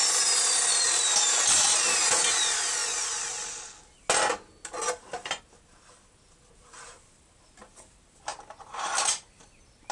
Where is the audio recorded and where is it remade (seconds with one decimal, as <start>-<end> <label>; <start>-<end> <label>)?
0.0-9.9 recorded